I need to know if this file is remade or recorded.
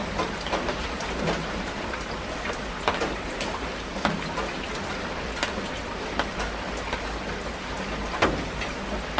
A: recorded